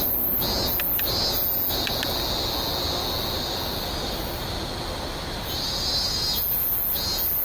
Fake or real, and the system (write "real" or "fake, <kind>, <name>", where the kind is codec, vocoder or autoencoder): real